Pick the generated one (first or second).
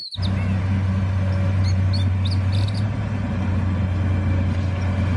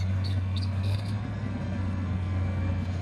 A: second